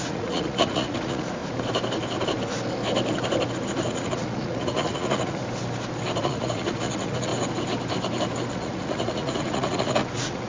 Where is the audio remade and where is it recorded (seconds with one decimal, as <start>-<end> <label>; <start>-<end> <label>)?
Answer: 0.0-1.4 remade; 1.4-3.9 recorded; 3.9-5.4 remade; 5.4-6.2 recorded; 6.2-7.3 remade; 7.3-8.5 recorded; 8.5-10.5 remade